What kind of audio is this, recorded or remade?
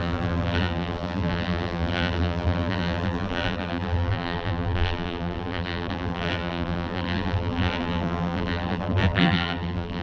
remade